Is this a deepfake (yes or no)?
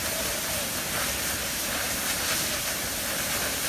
no